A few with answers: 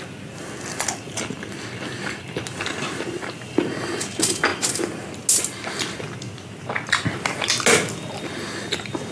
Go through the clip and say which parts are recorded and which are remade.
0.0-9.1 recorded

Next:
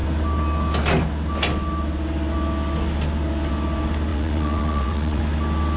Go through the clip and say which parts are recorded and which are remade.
0.0-4.1 recorded; 4.1-5.2 remade; 5.2-5.8 recorded

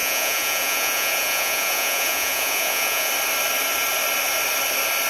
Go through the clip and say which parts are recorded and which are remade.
0.0-3.1 remade; 3.1-5.1 recorded